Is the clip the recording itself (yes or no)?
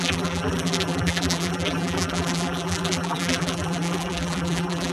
no